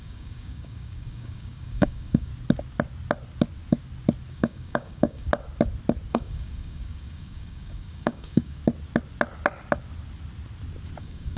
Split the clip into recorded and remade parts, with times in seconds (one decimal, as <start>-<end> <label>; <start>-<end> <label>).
0.0-2.3 remade; 2.3-4.3 recorded; 4.3-5.3 remade; 5.3-6.1 recorded; 6.1-8.6 remade; 8.6-11.0 recorded; 11.0-11.4 remade